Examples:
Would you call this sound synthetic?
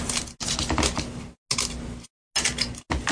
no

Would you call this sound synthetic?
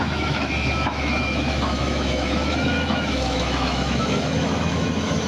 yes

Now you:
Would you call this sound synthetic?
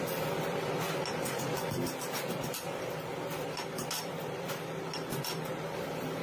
no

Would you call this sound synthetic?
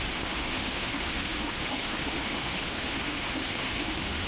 yes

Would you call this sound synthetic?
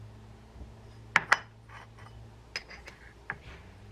no